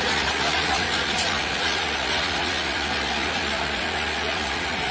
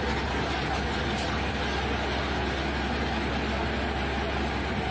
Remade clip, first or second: first